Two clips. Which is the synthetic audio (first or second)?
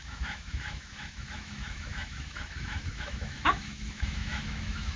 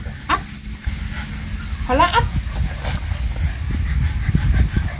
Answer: first